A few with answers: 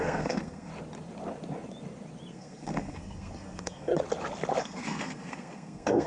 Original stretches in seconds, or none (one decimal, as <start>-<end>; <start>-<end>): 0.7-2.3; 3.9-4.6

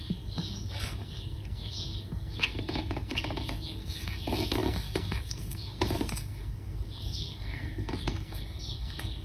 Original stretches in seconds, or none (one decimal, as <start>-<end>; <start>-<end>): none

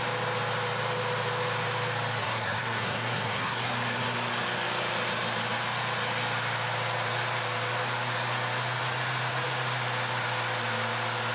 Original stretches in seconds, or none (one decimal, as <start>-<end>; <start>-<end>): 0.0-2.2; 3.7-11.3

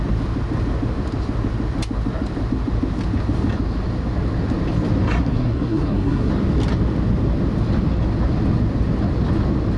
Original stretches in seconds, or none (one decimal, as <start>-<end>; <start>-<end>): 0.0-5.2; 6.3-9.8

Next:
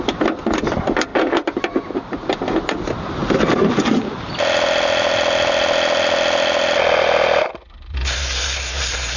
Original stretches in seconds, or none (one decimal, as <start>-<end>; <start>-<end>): 0.0-9.2